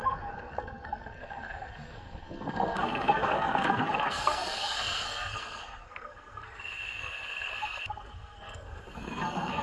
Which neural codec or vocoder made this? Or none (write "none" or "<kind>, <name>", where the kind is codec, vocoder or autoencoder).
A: codec, SNAC